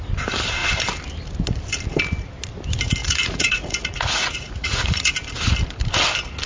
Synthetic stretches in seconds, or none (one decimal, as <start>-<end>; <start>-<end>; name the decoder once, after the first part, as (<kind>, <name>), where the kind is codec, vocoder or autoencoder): 3.0-5.1 (vocoder, Vocos)